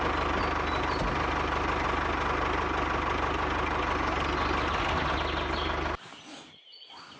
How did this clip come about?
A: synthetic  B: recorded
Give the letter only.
B